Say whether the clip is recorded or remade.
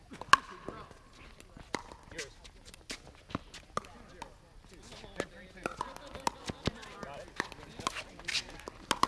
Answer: recorded